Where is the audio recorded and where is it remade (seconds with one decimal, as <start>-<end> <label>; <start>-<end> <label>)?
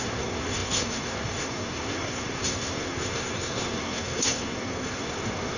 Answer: 0.0-5.6 remade